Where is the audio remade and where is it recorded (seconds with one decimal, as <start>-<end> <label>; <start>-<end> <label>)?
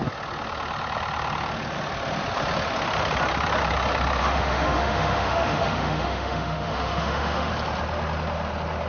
0.0-4.2 recorded; 4.2-7.5 remade; 7.5-8.9 recorded